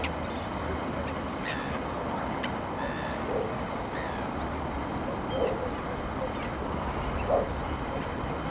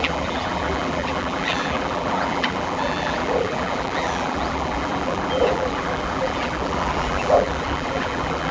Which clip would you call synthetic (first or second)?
second